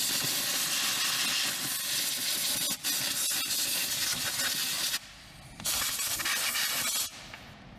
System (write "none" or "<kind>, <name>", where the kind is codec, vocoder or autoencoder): none